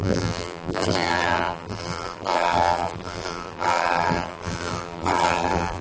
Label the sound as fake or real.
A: fake